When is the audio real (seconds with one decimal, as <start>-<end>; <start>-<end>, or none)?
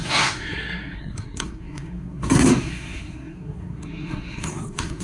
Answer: none